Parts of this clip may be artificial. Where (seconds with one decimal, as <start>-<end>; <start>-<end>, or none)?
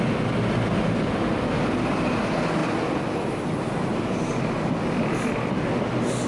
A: none